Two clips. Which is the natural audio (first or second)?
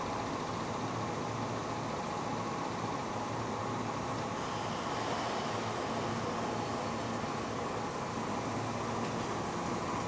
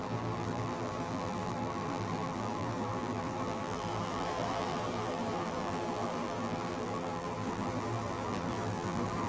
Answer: first